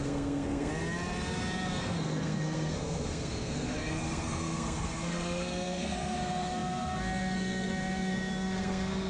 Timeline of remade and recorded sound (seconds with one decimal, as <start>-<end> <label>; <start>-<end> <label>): 0.0-0.7 remade; 0.7-1.8 recorded; 1.8-9.1 remade